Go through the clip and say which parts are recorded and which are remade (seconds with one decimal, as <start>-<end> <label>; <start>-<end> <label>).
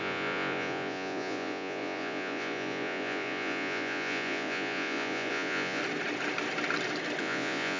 0.0-5.8 remade; 5.8-7.2 recorded; 7.2-7.8 remade